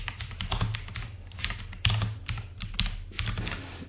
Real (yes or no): yes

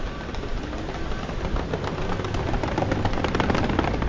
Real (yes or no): yes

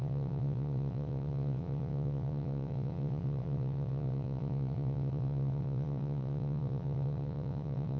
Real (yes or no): no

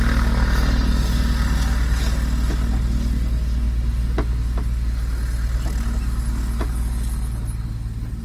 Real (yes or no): yes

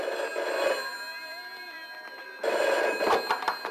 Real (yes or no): yes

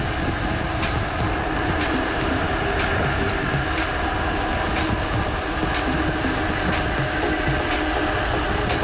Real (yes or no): yes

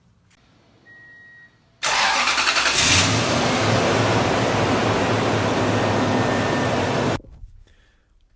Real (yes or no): yes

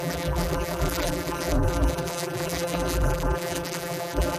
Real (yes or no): no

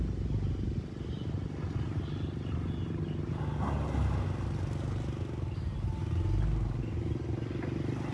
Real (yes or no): yes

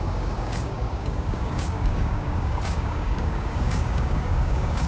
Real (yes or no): no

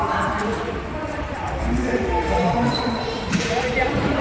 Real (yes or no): no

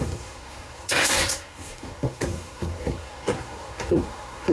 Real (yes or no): no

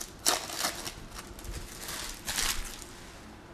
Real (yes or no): yes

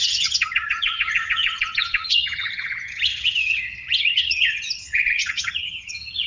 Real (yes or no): no